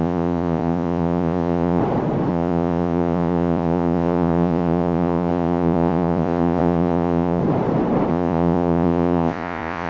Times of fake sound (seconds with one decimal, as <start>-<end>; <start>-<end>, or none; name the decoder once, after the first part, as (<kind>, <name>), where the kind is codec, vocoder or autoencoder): 0.0-1.8 (vocoder, Vocos); 2.3-7.4; 8.1-9.9